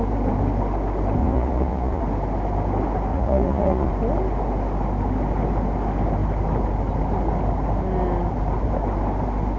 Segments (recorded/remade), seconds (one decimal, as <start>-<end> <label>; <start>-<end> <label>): 0.0-1.2 recorded; 1.2-2.0 remade; 2.0-3.1 recorded; 3.1-3.9 remade; 3.9-9.6 recorded